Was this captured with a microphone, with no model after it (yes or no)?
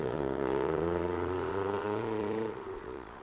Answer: no